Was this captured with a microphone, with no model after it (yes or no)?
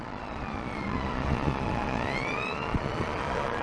no